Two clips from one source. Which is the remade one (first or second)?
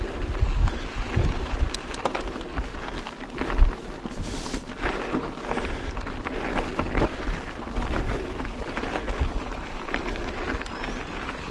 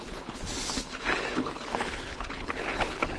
second